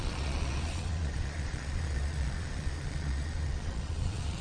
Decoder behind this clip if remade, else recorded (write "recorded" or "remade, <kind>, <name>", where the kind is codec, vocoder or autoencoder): remade, vocoder, Vocos